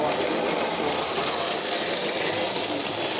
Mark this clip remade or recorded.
recorded